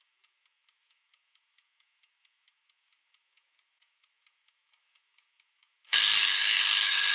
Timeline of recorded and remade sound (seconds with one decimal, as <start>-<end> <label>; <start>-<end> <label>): 0.0-7.1 remade